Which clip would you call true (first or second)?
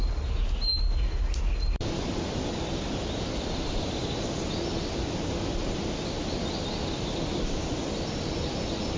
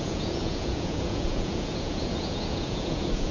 first